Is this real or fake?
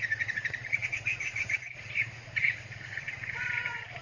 fake